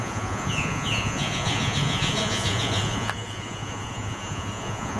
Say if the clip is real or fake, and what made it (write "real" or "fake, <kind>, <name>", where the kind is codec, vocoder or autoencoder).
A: fake, vocoder, Vocos